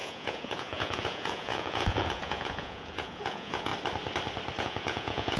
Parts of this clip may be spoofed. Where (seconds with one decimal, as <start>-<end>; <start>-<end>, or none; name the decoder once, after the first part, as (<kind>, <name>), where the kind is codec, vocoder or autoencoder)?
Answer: 0.0-3.7 (vocoder, Vocos); 4.6-5.4